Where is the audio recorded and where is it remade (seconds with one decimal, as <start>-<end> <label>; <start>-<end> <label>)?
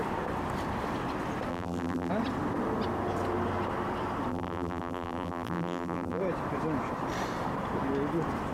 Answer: 0.0-1.5 recorded; 1.5-2.1 remade; 2.1-4.3 recorded; 4.3-6.2 remade; 6.2-8.5 recorded